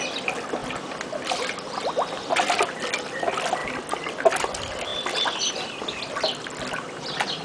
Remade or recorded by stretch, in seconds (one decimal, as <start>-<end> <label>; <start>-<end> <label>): 0.0-4.9 recorded; 4.9-5.5 remade; 5.5-7.4 recorded

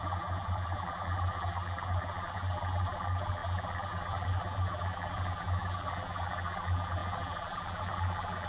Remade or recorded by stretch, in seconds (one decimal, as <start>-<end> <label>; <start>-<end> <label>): 0.0-8.5 remade

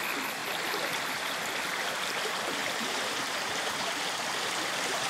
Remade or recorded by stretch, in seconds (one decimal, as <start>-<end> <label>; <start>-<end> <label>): 0.0-2.6 recorded; 2.6-5.1 remade

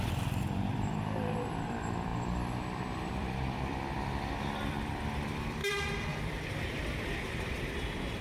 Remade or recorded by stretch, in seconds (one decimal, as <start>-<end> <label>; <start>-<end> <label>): 0.0-5.6 remade; 5.6-6.2 recorded; 6.2-8.2 remade

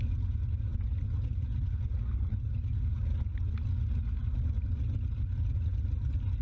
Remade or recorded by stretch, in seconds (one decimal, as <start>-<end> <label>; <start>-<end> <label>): 0.0-6.4 recorded

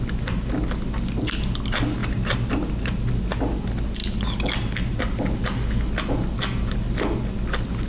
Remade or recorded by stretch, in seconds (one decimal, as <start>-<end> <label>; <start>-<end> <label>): 0.0-2.0 recorded; 2.0-2.7 remade; 2.7-7.9 recorded

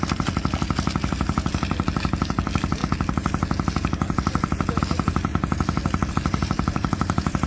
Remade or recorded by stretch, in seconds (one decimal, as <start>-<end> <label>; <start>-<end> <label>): 0.0-2.8 remade; 2.8-4.8 recorded; 4.8-5.3 remade; 5.3-6.1 recorded; 6.1-7.5 remade

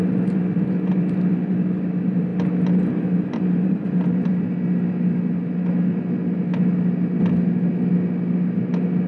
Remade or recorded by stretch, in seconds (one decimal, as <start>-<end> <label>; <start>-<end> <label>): 0.0-2.3 remade; 2.3-3.0 recorded; 3.0-4.3 remade; 4.3-9.1 recorded